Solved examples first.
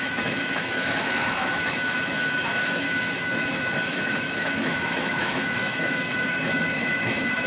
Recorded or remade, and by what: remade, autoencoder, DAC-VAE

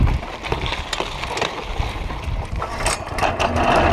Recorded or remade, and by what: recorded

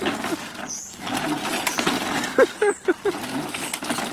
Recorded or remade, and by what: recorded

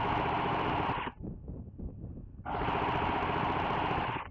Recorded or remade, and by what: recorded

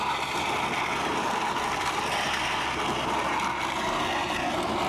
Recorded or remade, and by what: recorded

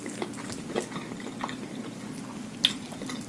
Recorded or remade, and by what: recorded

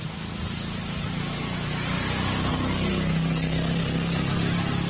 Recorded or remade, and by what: recorded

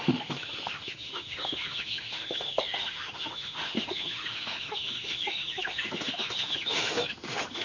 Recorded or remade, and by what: remade, autoencoder, DAC-VAE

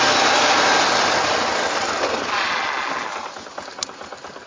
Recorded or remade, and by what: recorded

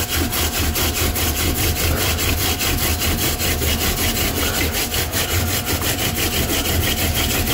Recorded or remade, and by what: recorded